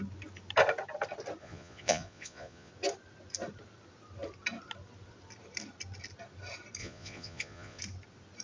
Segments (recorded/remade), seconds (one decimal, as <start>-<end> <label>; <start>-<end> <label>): 0.0-1.4 recorded; 1.4-2.7 remade; 2.7-6.8 recorded; 6.8-7.8 remade; 7.8-8.4 recorded